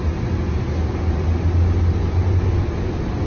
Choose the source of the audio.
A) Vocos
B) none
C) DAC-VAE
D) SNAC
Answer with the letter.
B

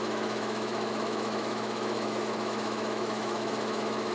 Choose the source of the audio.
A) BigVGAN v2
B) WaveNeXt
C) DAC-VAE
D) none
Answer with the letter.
C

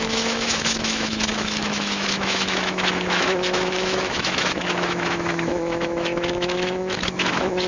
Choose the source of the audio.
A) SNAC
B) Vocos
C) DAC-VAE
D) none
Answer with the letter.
C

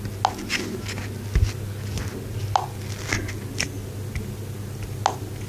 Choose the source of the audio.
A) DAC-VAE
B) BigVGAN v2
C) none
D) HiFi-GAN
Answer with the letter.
C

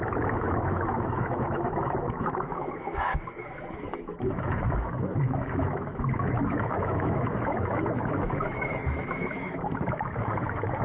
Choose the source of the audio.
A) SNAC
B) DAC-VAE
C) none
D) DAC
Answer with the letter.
B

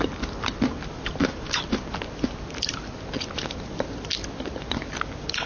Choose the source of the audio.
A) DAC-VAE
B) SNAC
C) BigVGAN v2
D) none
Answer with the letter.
D